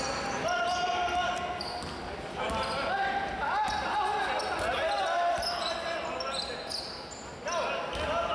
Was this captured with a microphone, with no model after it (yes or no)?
yes